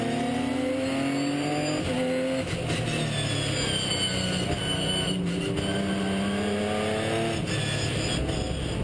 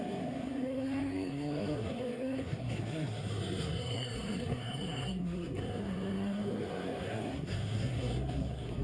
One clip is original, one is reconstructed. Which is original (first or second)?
first